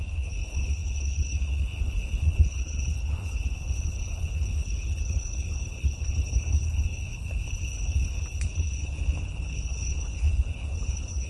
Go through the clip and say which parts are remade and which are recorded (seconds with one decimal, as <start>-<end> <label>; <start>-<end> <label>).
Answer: 0.0-11.3 remade